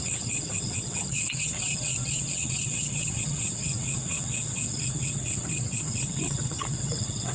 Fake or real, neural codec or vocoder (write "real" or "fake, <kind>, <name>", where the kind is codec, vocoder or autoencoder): fake, vocoder, WaveNeXt